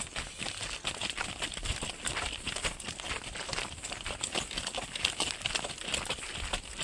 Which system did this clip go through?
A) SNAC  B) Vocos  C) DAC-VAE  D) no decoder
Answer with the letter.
D